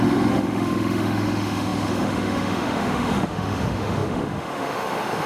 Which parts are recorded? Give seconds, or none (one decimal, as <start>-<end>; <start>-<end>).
none